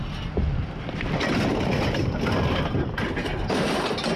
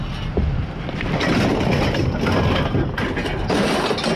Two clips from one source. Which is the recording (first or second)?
second